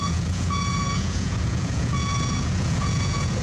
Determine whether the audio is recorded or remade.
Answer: remade